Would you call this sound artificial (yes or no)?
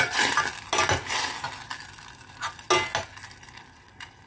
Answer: no